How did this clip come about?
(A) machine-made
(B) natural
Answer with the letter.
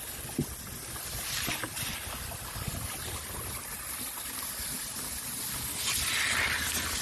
B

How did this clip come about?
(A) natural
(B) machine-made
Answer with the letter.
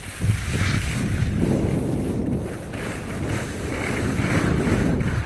A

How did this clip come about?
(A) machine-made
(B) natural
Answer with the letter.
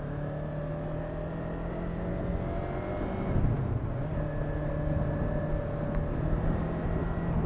B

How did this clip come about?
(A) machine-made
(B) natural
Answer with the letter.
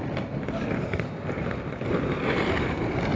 B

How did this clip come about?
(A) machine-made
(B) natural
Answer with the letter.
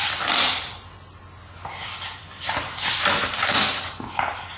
B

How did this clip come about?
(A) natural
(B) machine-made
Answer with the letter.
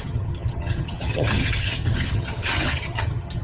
B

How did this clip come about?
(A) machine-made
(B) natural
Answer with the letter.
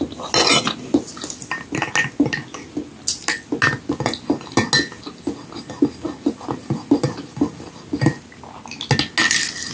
B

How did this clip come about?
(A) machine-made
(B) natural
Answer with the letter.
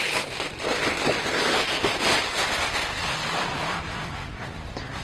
B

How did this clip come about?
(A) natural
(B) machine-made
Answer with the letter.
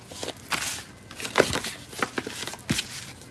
A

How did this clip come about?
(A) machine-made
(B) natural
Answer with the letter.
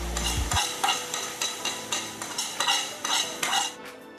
B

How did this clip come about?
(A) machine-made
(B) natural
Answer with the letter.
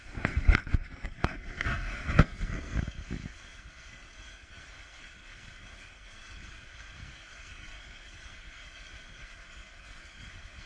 A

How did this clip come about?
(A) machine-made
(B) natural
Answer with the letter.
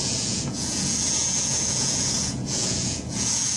A